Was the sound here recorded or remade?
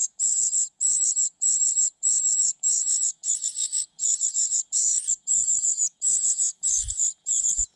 remade